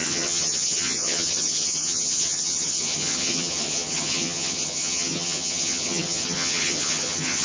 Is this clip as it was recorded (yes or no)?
no